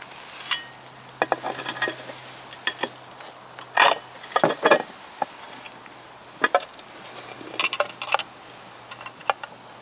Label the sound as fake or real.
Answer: real